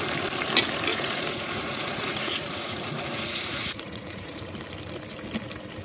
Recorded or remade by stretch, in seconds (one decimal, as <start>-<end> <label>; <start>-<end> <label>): 0.0-0.9 recorded; 0.9-4.4 remade; 4.4-5.8 recorded